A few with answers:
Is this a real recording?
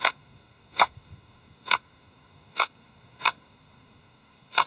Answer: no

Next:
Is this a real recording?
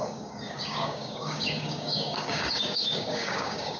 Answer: no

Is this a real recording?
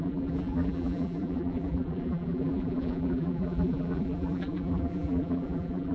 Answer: no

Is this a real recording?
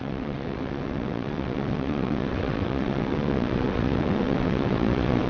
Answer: no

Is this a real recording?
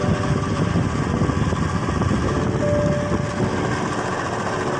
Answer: yes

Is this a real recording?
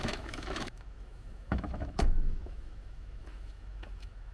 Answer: no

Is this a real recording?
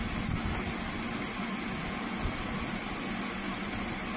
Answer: yes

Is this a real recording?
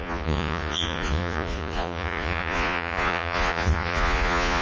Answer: no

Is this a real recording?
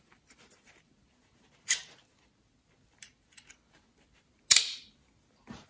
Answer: yes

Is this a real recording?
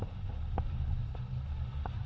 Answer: yes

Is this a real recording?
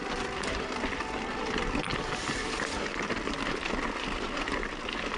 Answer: no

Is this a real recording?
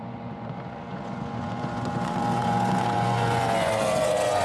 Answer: no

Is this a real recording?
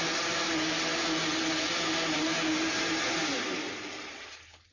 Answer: yes